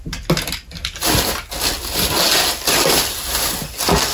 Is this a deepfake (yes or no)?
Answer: no